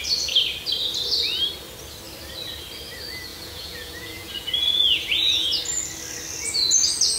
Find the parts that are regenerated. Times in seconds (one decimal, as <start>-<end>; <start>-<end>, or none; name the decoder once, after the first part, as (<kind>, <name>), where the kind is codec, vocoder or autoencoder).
3.3-5.6 (vocoder, Vocos)